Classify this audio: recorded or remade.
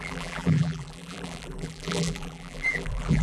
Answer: remade